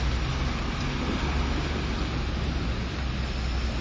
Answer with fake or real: real